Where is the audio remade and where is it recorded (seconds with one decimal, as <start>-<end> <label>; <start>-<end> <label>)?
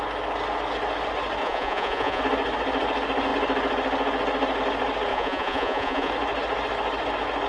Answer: 0.0-1.4 recorded; 1.4-2.2 remade; 2.2-5.1 recorded; 5.1-6.1 remade; 6.1-7.5 recorded